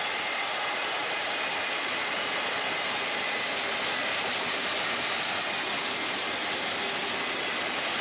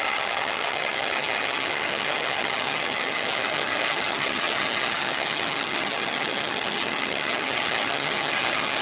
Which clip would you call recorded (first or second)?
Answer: first